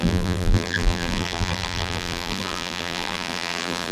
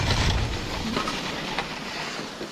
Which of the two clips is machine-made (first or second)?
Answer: first